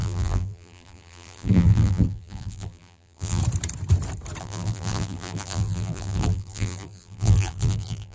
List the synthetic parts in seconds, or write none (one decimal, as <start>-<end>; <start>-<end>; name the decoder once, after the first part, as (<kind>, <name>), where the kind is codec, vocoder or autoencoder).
0.0-3.4 (vocoder, BigVGAN v2); 4.4-8.1